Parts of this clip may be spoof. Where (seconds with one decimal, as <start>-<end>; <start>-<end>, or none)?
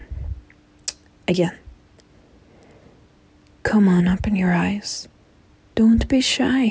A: none